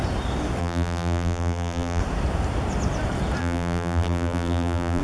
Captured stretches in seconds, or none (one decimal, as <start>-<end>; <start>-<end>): 0.0-0.6; 2.0-3.4